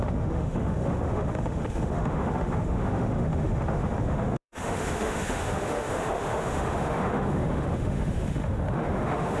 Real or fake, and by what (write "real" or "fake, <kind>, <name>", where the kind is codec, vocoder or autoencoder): fake, autoencoder, DAC-VAE